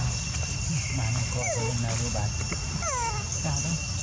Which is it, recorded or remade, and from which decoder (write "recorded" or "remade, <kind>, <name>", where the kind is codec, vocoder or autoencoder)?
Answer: recorded